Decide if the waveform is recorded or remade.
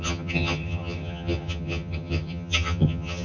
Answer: remade